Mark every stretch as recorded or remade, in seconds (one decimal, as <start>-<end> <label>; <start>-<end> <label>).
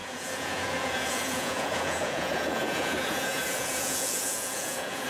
0.0-5.1 remade